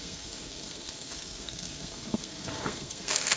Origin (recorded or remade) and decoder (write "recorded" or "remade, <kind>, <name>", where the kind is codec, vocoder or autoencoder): remade, codec, SNAC